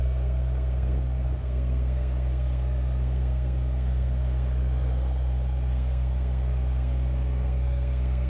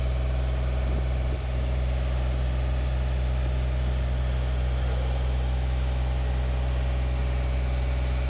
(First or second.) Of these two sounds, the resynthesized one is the first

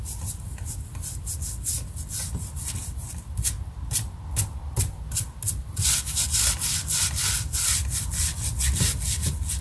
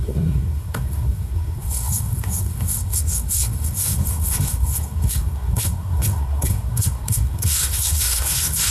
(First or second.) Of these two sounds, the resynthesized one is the second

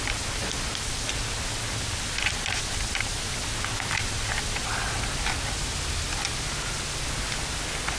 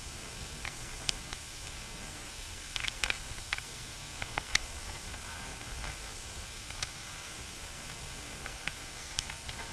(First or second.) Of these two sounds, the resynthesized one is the second